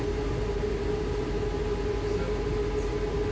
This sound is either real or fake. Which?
real